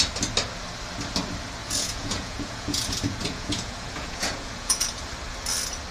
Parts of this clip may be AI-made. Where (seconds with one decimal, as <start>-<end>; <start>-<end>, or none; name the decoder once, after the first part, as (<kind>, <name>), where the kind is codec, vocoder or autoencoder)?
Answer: 1.6-5.1 (vocoder, Vocos)

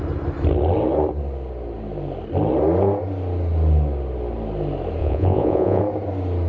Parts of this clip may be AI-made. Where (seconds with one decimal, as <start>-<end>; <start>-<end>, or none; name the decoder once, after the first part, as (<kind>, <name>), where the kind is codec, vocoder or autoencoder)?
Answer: 5.0-5.8 (vocoder, Vocos)

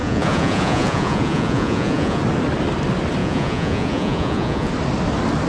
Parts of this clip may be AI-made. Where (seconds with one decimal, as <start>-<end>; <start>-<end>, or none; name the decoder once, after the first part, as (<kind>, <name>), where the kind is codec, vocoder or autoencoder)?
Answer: 0.0-2.2 (vocoder, Vocos); 3.2-4.7

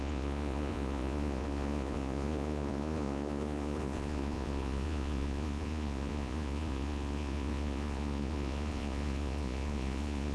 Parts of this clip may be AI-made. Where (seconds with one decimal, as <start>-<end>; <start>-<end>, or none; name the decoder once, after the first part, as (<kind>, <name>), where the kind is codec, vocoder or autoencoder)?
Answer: 0.0-10.3 (vocoder, Vocos)

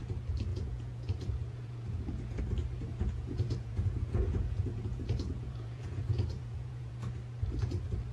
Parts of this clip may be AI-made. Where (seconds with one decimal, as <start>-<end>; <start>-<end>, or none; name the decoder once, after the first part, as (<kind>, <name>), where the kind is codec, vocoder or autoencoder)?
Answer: 0.5-2.4 (vocoder, Vocos); 2.9-6.9